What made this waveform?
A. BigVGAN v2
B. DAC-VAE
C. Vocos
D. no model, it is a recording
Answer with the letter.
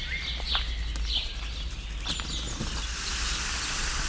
D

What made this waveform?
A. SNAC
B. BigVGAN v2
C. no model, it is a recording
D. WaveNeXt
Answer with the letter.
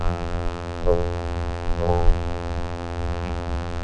B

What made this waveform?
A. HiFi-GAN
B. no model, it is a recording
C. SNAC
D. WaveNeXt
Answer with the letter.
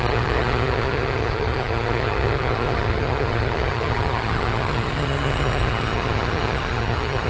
A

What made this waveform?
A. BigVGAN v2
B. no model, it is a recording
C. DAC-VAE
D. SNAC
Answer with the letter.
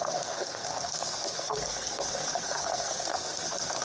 D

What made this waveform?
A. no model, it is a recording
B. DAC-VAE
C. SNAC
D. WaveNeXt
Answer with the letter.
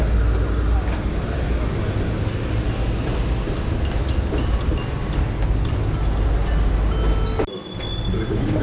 A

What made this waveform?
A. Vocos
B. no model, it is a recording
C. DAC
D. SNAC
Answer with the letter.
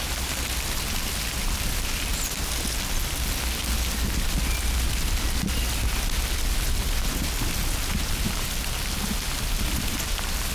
B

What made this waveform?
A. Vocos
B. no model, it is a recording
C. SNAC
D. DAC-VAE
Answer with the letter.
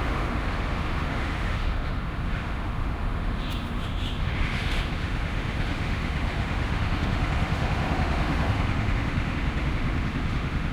D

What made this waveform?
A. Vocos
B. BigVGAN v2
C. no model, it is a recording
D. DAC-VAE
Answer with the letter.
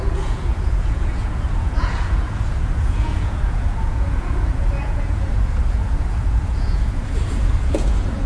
A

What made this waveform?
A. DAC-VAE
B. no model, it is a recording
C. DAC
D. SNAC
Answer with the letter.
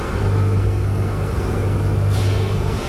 D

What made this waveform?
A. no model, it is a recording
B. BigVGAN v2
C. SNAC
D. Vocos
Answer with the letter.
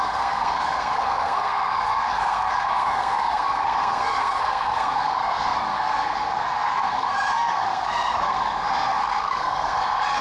C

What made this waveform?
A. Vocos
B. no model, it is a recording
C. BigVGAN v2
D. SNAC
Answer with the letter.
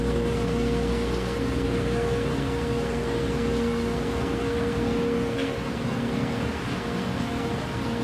D